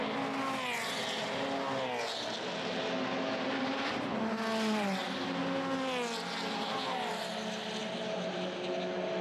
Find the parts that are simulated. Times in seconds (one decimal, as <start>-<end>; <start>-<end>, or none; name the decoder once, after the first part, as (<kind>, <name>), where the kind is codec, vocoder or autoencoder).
none